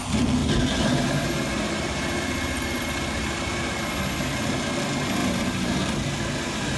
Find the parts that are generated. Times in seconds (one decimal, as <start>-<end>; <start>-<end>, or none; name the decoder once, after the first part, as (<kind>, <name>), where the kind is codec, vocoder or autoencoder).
0.4-4.5 (vocoder, BigVGAN v2); 5.2-5.9